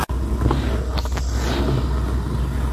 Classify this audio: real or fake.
real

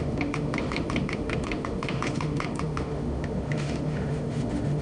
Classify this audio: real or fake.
fake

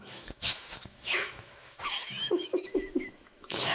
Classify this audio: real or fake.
fake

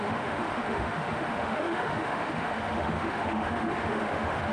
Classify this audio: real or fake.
fake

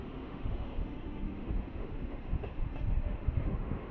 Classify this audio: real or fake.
fake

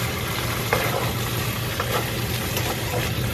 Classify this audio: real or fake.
real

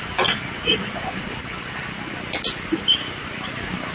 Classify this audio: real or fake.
real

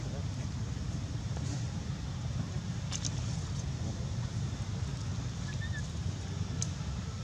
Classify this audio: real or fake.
real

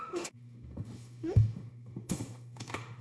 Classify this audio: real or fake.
fake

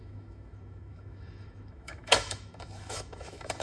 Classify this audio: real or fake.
fake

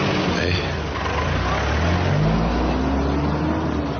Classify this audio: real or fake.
real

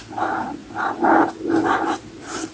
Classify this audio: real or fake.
real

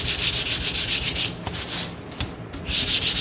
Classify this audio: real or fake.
real